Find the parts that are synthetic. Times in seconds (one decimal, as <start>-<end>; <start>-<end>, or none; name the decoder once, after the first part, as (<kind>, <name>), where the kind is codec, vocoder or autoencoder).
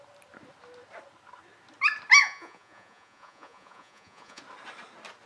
2.2-4.4 (vocoder, Vocos)